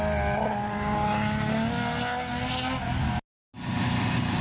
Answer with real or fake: real